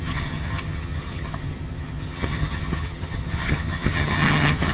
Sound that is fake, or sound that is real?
fake